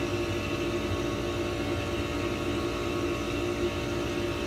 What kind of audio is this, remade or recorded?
recorded